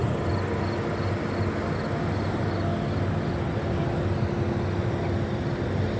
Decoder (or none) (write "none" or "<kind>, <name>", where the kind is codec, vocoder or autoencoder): none